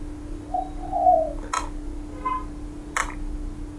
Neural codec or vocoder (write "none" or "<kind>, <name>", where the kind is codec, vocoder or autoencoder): none